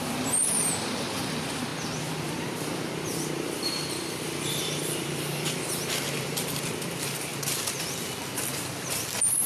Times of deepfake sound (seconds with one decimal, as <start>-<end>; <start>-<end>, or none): 0.0-7.3; 9.1-9.5